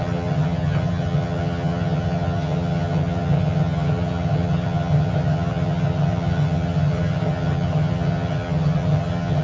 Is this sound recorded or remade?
remade